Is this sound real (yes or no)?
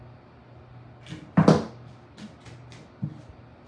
yes